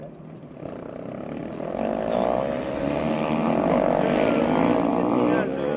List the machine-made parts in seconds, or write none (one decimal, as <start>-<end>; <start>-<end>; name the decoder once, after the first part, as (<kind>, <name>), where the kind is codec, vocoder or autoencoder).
none